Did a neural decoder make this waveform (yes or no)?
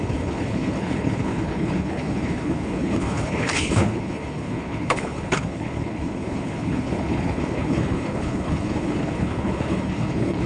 yes